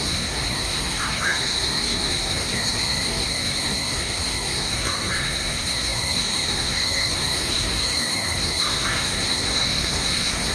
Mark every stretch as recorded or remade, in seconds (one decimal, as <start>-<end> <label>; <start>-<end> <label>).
0.0-10.5 remade